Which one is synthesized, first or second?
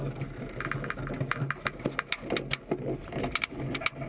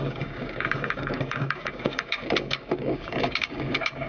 second